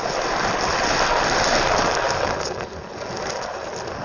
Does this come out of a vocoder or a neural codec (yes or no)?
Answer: no